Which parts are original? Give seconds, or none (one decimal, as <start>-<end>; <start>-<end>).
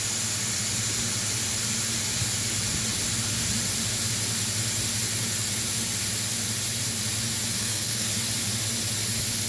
0.0-7.6; 8.1-9.5